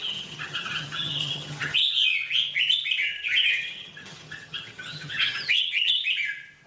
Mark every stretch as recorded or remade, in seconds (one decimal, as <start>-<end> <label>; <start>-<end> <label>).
0.0-1.8 remade; 1.8-3.0 recorded; 3.0-6.0 remade; 6.0-6.7 recorded